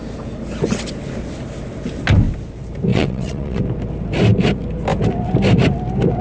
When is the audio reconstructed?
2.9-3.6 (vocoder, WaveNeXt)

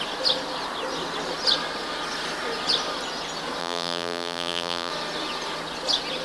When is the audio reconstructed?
3.6-4.9 (vocoder, BigVGAN v2)

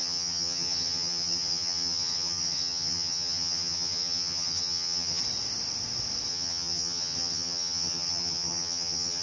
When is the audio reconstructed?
0.0-5.2 (vocoder, HiFi-GAN); 6.3-9.2

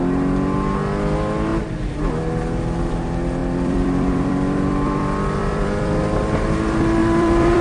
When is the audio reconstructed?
3.4-6.0 (vocoder, BigVGAN v2); 7.0-7.6